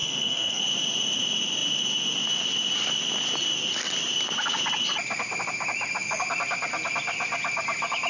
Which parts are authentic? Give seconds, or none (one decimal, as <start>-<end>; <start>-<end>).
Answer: 0.6-8.1